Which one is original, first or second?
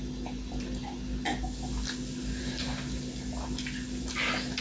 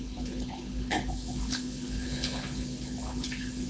first